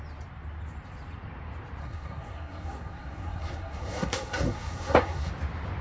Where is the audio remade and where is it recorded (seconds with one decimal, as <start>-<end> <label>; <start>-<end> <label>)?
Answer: 0.0-1.8 recorded; 1.8-5.3 remade; 5.3-5.8 recorded